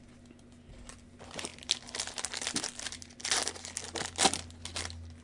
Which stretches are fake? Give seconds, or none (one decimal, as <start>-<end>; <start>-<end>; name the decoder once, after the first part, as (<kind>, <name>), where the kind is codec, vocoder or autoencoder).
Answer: none